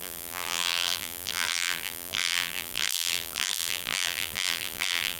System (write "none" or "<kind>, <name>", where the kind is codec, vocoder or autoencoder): vocoder, BigVGAN v2